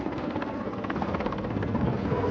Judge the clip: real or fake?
fake